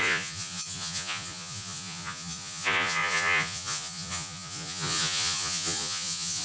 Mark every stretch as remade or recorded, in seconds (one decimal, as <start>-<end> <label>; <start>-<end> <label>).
0.0-6.4 remade